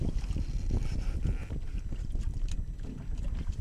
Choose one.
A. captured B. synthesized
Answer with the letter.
A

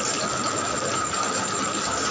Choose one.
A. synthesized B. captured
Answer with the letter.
B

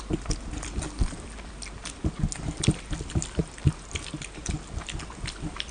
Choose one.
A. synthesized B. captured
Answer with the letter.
B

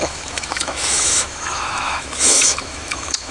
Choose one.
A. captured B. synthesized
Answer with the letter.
B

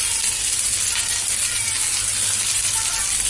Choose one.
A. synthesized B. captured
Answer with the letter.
B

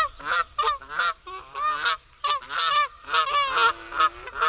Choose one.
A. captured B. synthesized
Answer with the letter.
A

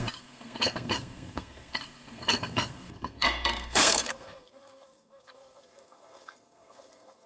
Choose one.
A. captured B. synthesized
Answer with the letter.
B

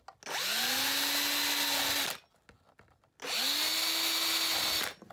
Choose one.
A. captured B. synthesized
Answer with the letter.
A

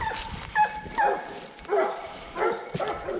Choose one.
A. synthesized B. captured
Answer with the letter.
B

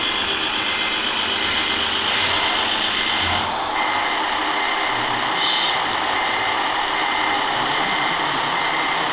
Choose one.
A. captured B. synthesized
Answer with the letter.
A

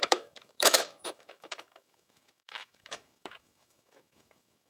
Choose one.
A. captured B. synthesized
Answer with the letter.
B